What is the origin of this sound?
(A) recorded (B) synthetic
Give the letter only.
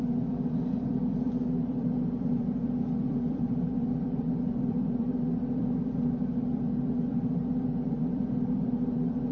B